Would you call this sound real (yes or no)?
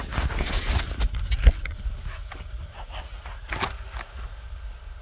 yes